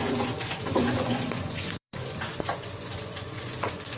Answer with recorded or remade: remade